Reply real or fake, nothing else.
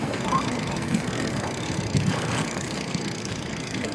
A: fake